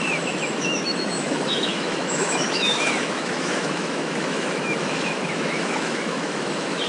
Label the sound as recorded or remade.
remade